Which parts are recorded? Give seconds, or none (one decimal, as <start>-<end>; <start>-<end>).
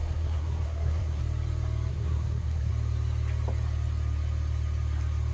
1.2-1.9; 2.7-5.3